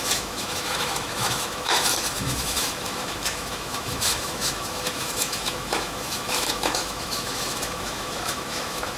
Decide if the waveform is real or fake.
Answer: fake